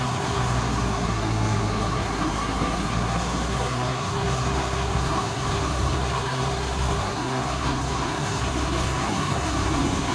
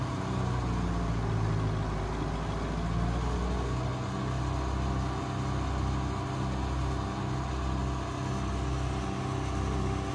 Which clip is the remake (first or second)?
first